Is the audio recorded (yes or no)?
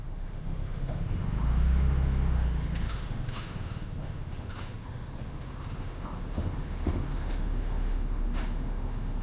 no